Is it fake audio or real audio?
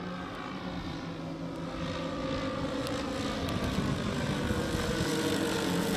real